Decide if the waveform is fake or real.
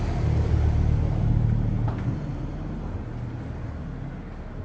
real